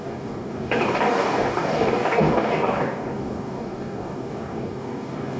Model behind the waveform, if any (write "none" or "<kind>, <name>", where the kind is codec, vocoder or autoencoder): codec, DAC